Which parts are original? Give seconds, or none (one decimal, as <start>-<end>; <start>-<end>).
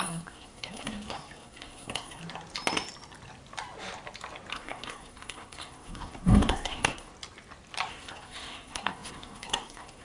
2.2-4.5; 7.1-7.9